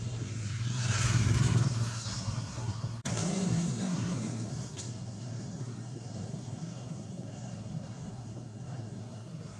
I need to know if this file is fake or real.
fake